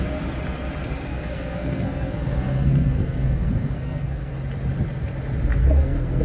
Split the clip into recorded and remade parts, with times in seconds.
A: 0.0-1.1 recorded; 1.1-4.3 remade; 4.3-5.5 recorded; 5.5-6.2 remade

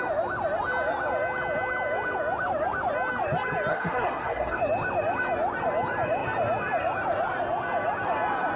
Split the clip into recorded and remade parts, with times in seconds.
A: 0.0-3.7 recorded; 3.7-4.6 remade; 4.6-8.6 recorded

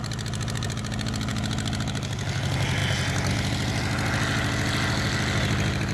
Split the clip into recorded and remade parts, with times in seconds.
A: 0.0-5.9 recorded

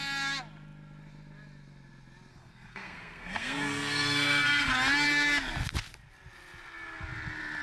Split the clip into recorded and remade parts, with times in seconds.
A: 0.0-2.3 recorded; 2.3-4.7 remade; 4.7-7.6 recorded